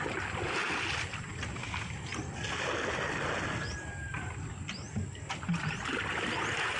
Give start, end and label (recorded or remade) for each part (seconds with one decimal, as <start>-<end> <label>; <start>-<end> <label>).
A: 0.0-6.8 recorded